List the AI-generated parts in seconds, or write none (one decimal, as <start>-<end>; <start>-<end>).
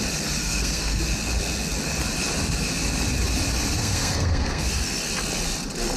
0.4-1.0; 3.8-4.7